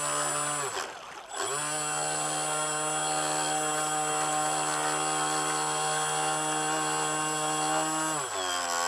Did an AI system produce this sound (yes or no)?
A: no